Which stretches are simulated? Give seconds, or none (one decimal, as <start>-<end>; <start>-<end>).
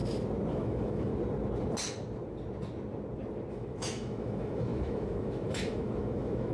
0.5-1.1; 3.5-6.5